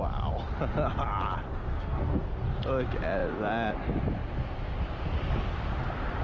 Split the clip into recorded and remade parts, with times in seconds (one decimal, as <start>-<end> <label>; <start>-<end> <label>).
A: 0.0-1.7 recorded; 1.7-2.3 remade; 2.3-6.2 recorded